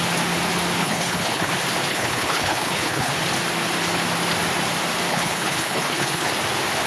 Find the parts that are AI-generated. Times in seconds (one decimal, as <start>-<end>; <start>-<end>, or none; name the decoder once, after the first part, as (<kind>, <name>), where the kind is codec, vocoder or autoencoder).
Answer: 0.8-1.5 (codec, HILCodec); 1.9-3.1; 5.1-6.3